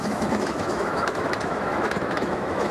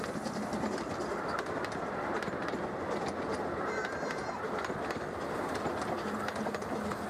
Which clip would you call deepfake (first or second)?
first